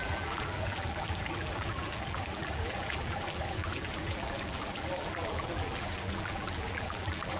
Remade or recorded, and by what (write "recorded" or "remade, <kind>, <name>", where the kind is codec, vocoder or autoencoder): remade, vocoder, BigVGAN v2